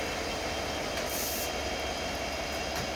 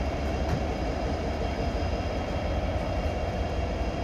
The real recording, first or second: first